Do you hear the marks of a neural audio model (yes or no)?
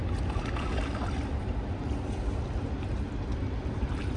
no